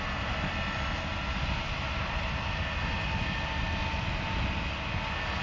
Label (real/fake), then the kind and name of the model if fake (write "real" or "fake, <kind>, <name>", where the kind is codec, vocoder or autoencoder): real